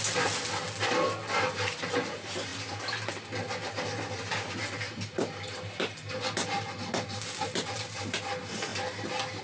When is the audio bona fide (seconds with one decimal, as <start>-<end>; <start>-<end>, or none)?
0.0-9.4